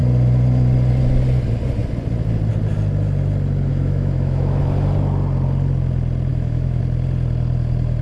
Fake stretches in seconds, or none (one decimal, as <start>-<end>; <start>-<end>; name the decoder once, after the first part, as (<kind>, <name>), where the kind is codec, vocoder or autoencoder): 3.7-4.6 (autoencoder, DAC-VAE); 6.3-6.8